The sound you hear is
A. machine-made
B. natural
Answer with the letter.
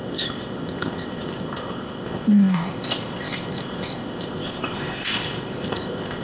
A